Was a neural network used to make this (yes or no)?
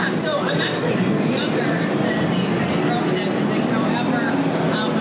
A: no